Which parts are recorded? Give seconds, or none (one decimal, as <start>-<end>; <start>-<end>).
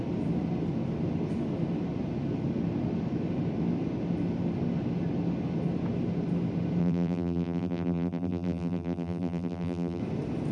0.0-6.8; 10.0-10.5